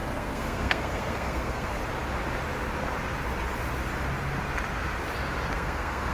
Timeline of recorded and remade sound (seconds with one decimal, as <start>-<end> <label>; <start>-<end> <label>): 0.0-1.8 remade; 1.8-5.5 recorded; 5.5-6.1 remade